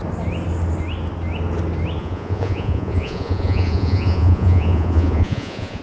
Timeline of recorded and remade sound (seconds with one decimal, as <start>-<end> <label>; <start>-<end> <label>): 0.0-2.0 recorded; 2.0-5.8 remade